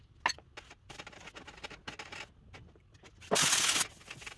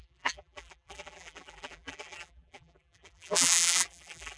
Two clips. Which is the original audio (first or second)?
first